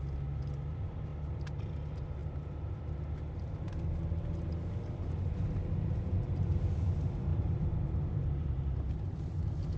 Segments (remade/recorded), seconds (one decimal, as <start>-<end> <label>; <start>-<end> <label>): 0.0-1.1 recorded; 1.1-1.7 remade; 1.7-7.3 recorded; 7.3-9.4 remade; 9.4-9.8 recorded